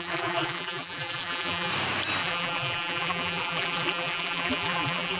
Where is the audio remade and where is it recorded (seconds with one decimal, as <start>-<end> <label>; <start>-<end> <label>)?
0.0-1.7 remade; 1.7-2.2 recorded; 2.2-5.2 remade